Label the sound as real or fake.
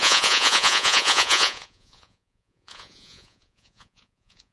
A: fake